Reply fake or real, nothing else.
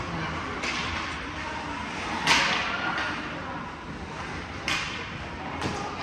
real